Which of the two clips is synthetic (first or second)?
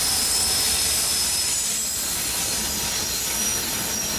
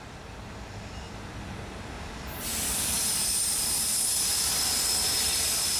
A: second